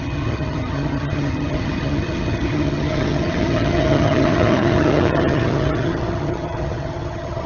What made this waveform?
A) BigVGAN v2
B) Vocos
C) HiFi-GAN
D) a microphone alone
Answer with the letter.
C